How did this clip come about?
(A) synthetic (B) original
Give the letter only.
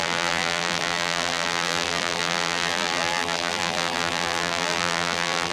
A